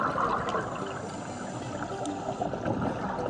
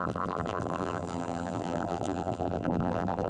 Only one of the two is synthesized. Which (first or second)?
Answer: second